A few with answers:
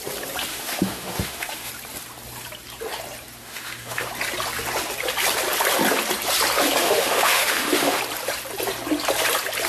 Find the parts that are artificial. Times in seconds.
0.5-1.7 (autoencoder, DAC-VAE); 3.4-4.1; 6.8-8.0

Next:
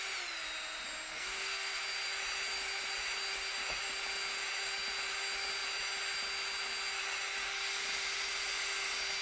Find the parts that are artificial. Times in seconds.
1.1-1.8 (codec, SNAC)

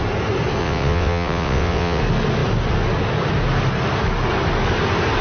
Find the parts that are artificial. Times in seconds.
0.6-2.0 (vocoder, WaveNeXt)

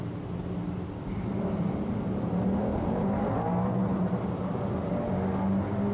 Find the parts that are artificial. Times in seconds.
2.7-3.4 (vocoder, BigVGAN v2); 3.8-4.9

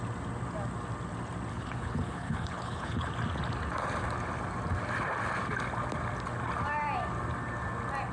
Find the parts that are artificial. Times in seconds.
1.5-3.1 (codec, HILCodec)

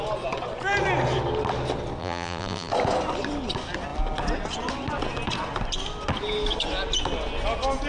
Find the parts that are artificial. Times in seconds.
2.0-2.7 (vocoder, BigVGAN v2)

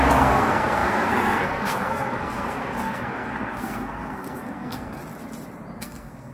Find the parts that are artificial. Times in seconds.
0.0-5.0 (codec, SNAC); 5.8-6.3

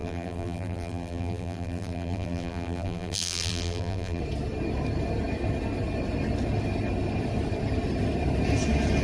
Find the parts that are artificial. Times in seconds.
0.0-4.2 (vocoder, BigVGAN v2)